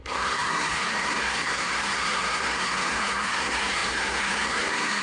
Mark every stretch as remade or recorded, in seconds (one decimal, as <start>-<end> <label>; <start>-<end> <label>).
0.0-5.0 remade